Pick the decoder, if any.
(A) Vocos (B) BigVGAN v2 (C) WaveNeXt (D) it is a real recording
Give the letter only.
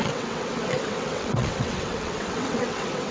C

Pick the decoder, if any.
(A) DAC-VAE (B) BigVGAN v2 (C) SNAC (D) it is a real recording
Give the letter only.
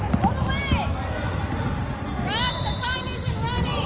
D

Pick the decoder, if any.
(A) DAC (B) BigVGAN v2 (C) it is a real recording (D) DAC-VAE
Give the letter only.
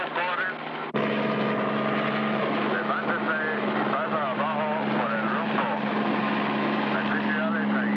C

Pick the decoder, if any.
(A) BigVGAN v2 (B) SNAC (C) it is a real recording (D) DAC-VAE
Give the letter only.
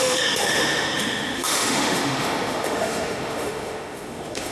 D